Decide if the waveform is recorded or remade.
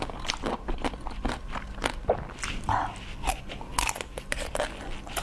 recorded